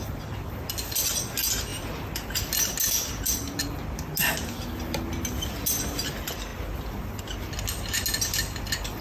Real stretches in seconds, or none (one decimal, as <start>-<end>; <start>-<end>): 0.0-9.0